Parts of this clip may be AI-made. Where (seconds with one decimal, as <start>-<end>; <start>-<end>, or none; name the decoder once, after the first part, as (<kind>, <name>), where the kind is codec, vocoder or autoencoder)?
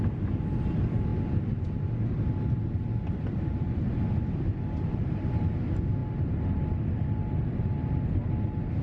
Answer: 0.0-1.1 (vocoder, BigVGAN v2); 4.9-6.0